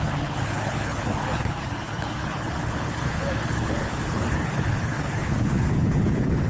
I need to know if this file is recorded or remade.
remade